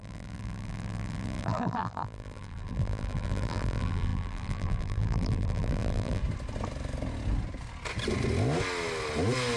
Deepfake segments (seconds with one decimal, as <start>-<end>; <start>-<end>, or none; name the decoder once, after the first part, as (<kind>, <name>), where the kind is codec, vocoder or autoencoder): 0.0-6.2 (vocoder, BigVGAN v2)